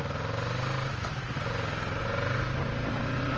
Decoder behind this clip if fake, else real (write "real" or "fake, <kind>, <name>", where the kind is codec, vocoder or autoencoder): real